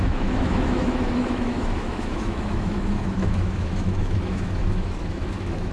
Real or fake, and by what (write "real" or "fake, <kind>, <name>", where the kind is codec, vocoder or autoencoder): fake, autoencoder, DAC-VAE